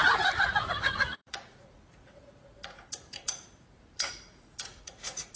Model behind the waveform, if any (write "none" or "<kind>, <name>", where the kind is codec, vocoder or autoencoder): vocoder, Vocos